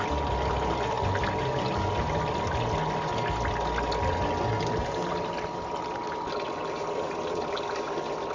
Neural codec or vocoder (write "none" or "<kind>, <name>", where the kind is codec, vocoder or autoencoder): none